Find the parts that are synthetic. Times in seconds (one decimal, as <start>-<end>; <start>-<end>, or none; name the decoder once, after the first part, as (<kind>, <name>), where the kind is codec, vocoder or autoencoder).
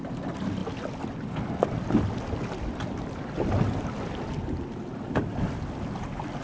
none